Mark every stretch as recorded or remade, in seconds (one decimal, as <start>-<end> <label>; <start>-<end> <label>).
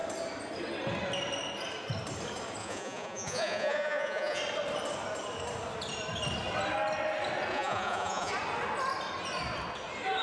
0.0-2.6 recorded; 2.6-4.4 remade; 4.4-7.5 recorded; 7.5-8.3 remade; 8.3-10.2 recorded